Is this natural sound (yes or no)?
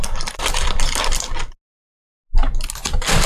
yes